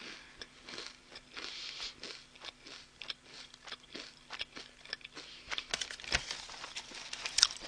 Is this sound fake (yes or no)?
no